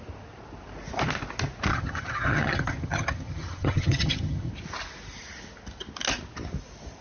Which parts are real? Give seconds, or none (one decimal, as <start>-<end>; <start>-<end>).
0.0-1.7; 4.5-7.0